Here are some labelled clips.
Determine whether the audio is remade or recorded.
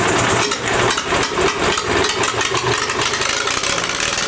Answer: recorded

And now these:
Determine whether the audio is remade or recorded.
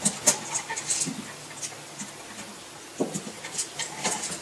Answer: recorded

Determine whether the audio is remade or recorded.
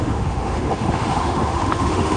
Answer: remade